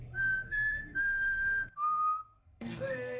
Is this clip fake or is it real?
fake